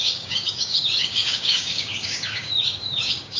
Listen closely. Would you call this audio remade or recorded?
remade